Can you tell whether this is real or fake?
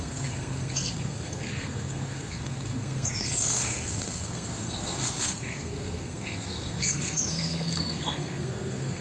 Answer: fake